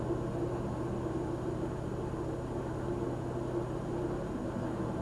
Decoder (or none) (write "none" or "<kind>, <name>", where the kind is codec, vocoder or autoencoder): none